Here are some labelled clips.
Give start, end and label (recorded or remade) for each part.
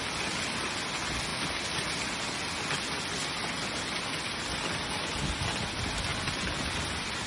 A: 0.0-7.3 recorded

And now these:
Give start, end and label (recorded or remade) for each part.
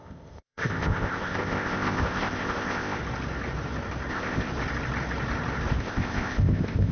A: 0.0-3.0 remade; 3.0-4.1 recorded; 4.1-4.5 remade; 4.5-5.8 recorded; 5.8-6.9 remade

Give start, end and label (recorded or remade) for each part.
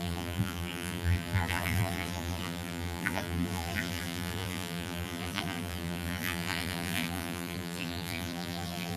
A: 0.0-9.0 remade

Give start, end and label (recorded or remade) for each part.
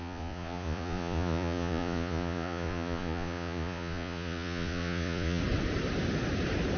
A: 0.0-5.4 remade; 5.4-6.8 recorded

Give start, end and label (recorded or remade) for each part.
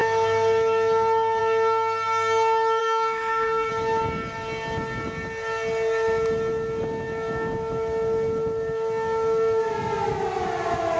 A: 0.0-2.8 recorded; 2.8-3.7 remade; 3.7-11.0 recorded